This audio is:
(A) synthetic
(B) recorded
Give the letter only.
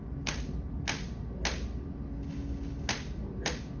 B